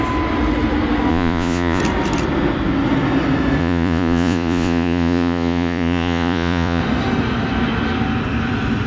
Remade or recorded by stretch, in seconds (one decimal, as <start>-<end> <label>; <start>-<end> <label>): 0.0-1.1 recorded; 1.1-1.8 remade; 1.8-3.6 recorded; 3.6-6.8 remade; 6.8-8.9 recorded